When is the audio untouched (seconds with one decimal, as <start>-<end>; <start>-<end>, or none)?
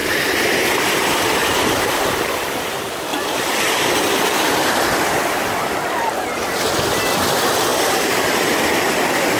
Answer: 2.1-3.1; 5.7-7.7; 9.0-9.4